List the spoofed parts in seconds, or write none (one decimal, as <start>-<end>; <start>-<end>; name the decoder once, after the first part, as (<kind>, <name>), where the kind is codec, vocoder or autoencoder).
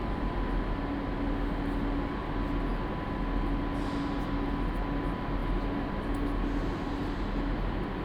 none